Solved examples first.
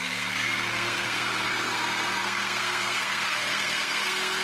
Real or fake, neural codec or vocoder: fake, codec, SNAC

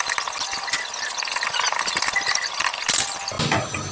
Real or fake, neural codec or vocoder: real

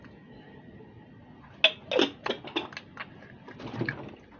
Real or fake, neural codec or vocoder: real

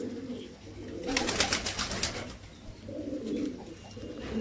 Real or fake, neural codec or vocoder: real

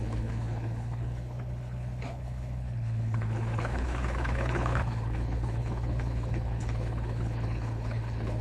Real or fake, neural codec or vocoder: fake, codec, HILCodec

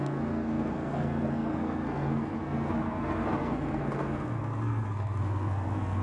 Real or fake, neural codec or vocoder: fake, codec, SNAC